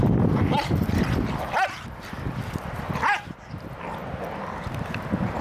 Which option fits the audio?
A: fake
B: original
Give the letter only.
B